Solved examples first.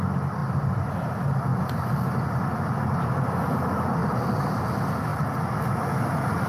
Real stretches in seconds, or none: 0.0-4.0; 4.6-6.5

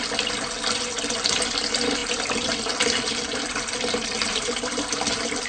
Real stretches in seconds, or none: 0.0-2.0

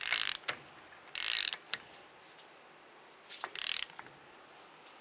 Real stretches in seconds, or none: 0.0-5.0

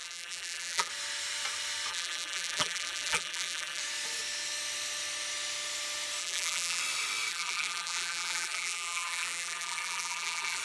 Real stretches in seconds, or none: 0.9-1.9; 3.8-6.2; 6.8-7.3

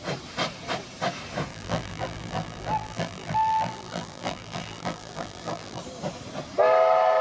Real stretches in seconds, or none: 0.0-1.5; 5.8-7.2

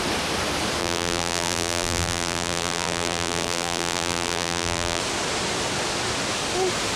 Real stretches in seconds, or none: 0.0-0.8; 5.0-7.0

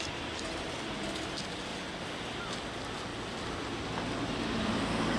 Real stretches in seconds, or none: 0.0-5.2